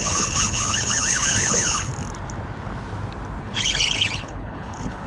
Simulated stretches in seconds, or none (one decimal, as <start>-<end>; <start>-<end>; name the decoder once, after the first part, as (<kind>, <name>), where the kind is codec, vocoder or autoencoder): 0.0-1.9 (codec, HILCodec); 3.4-5.1